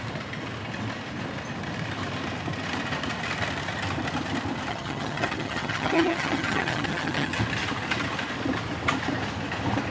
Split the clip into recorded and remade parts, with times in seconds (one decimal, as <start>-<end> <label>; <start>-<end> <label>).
0.0-4.7 recorded; 4.7-7.4 remade; 7.4-9.9 recorded

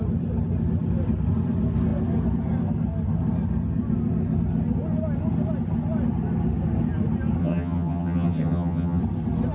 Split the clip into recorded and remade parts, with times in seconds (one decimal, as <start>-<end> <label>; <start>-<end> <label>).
0.0-7.4 recorded; 7.4-9.0 remade; 9.0-9.5 recorded

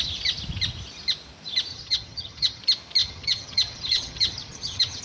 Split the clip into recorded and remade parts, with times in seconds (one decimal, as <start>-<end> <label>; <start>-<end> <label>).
0.0-1.7 recorded; 1.7-2.6 remade; 2.6-3.0 recorded; 3.0-5.0 remade